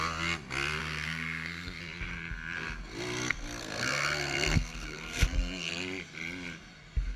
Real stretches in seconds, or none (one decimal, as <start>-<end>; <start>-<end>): 0.0-0.8; 1.8-3.6; 5.7-7.2

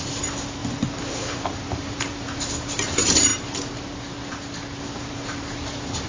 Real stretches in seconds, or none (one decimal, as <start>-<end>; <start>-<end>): 0.6-1.1; 3.3-4.8

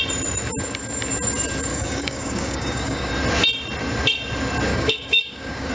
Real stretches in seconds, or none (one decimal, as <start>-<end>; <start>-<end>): 0.0-1.7; 3.1-4.7

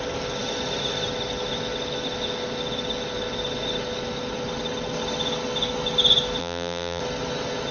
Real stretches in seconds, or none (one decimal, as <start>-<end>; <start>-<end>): 0.0-6.4; 7.0-7.7

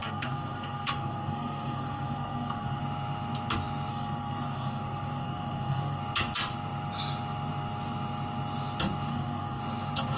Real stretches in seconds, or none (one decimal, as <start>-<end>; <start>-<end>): 2.8-3.9; 6.0-9.1; 9.6-10.2